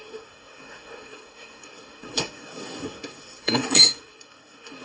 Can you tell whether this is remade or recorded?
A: remade